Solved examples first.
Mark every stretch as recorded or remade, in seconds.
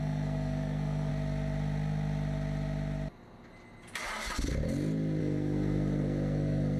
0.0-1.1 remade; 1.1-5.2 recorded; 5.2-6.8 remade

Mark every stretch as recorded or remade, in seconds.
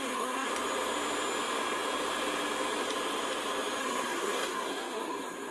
0.0-0.5 remade; 0.5-3.8 recorded; 3.8-5.5 remade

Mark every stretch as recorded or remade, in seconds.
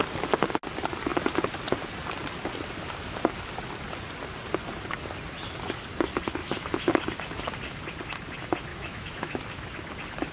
0.0-6.4 recorded; 6.4-6.9 remade; 6.9-8.7 recorded; 8.7-9.4 remade; 9.4-10.3 recorded